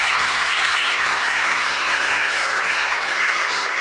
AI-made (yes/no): yes